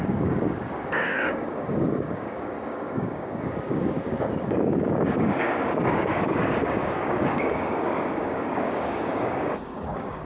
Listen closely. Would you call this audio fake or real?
fake